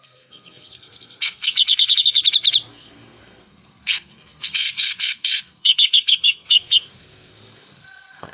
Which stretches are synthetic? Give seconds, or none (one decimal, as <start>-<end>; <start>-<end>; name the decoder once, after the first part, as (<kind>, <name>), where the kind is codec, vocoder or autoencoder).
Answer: 0.0-2.2 (codec, SNAC); 2.7-8.3